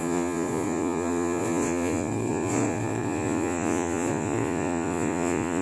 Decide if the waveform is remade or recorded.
remade